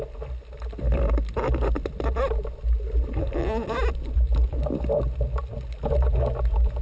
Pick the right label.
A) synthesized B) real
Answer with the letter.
B